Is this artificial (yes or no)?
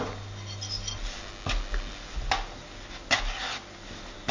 no